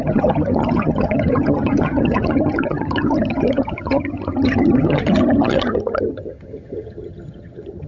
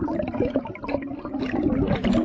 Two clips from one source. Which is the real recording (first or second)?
second